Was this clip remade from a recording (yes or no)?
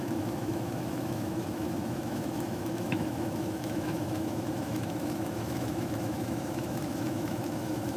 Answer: yes